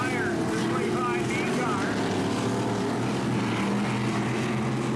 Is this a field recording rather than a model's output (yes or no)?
yes